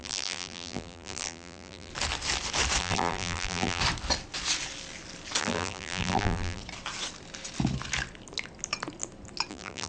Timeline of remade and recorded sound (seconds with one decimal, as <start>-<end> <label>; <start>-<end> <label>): 0.0-1.9 remade; 1.9-2.8 recorded; 2.8-3.8 remade; 3.8-5.4 recorded; 5.4-6.6 remade; 6.6-9.5 recorded; 9.5-9.9 remade